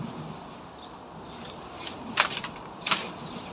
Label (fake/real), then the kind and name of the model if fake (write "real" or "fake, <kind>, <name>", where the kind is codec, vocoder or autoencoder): real